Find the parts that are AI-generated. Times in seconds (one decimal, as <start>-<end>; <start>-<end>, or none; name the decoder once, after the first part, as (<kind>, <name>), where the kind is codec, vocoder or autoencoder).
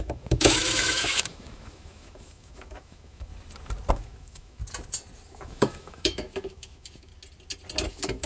0.0-3.3 (autoencoder, DAC-VAE); 3.9-4.6; 5.3-7.1; 7.9-8.3